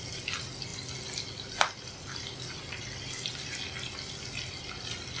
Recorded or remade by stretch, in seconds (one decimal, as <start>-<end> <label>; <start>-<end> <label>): 0.0-5.2 recorded